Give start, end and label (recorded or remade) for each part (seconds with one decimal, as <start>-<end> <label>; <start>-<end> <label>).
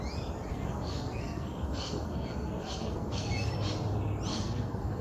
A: 0.0-0.5 recorded; 0.5-3.5 remade; 3.5-4.3 recorded; 4.3-5.0 remade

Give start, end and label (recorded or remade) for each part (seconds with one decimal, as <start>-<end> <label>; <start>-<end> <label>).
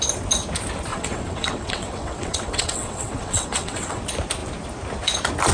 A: 0.0-0.9 recorded; 0.9-4.0 remade; 4.0-5.5 recorded